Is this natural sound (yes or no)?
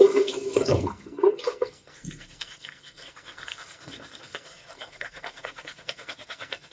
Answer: no